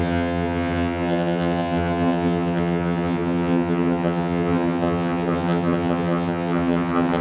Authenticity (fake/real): fake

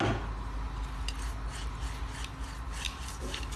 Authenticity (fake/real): real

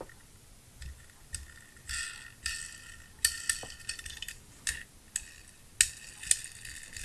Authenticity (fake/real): real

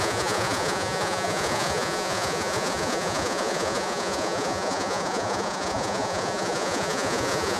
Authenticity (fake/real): fake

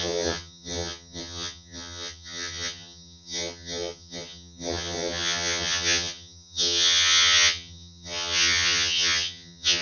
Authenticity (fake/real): fake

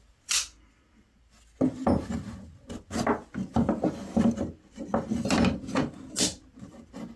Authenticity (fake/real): real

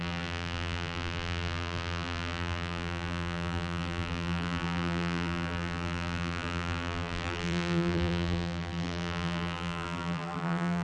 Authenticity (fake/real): fake